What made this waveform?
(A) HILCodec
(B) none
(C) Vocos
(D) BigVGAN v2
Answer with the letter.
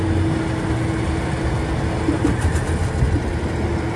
B